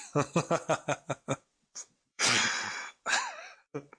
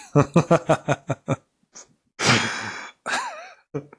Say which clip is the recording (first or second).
second